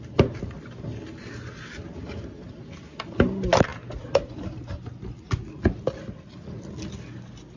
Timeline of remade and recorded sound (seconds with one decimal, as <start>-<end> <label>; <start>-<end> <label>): 0.0-7.6 recorded